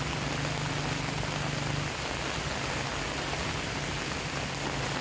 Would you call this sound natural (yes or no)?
yes